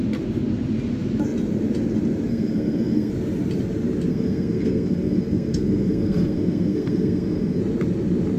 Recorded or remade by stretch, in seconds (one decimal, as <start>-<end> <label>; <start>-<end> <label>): 0.0-2.3 recorded; 2.3-3.1 remade; 3.1-4.1 recorded; 4.1-7.6 remade; 7.6-8.4 recorded